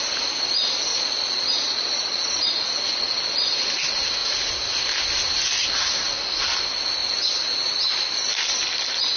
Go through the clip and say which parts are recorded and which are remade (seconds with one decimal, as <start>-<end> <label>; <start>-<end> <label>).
0.0-0.9 recorded; 0.9-2.6 remade; 2.6-9.2 recorded